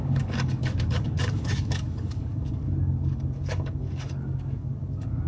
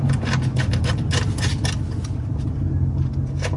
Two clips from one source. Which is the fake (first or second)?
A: first